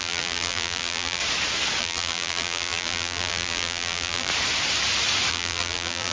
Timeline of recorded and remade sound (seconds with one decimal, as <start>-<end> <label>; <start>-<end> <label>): 0.0-1.2 remade; 1.2-1.8 recorded; 1.8-4.3 remade; 4.3-5.3 recorded; 5.3-6.1 remade